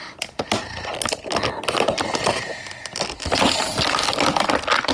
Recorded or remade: recorded